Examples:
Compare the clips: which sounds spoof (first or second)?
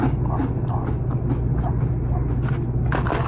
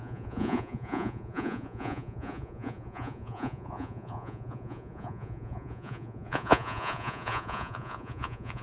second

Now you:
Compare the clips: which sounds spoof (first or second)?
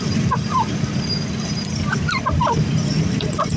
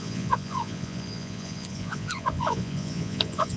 second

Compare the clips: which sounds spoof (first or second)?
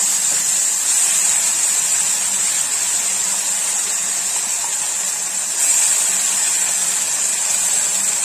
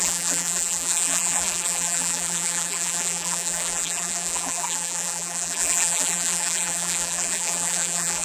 second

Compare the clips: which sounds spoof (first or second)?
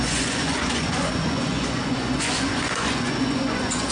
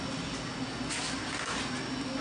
first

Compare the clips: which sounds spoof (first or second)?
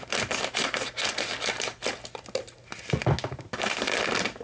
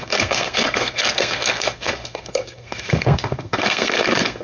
second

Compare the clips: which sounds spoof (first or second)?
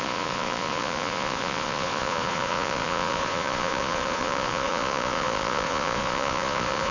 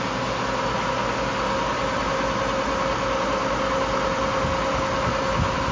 first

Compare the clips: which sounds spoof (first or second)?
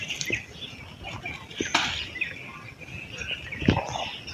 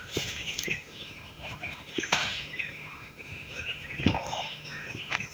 second